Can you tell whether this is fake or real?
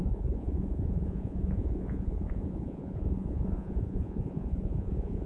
fake